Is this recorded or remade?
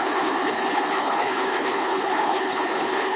remade